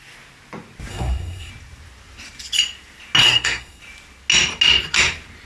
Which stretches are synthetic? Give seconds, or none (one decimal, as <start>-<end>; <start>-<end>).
0.9-1.5; 3.2-3.8